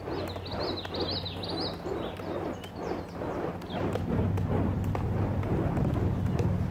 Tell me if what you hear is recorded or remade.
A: recorded